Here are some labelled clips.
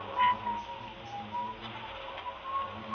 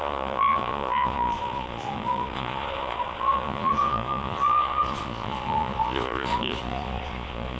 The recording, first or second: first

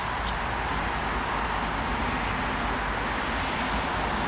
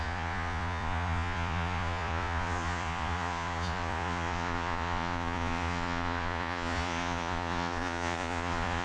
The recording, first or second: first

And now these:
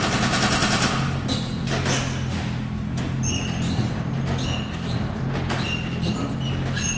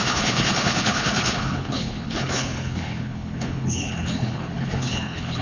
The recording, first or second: first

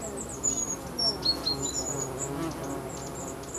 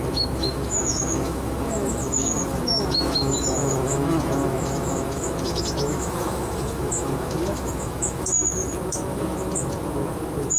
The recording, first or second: first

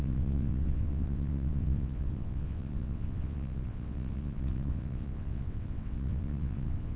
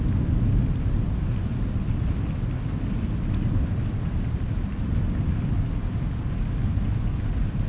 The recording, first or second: second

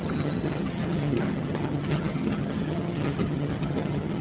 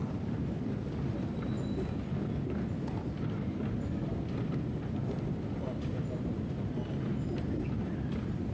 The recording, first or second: second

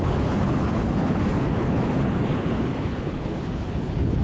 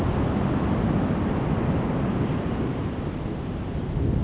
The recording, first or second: second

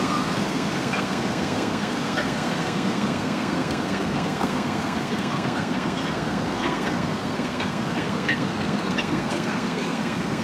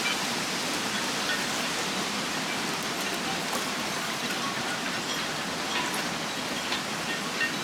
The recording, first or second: second